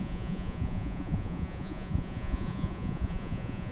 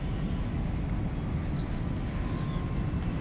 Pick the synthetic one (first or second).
first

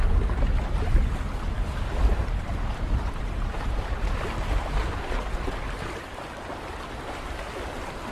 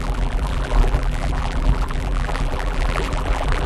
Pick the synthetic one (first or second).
second